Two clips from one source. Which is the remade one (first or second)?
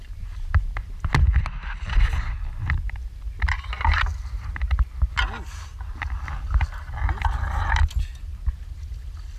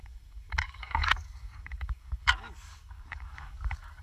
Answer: second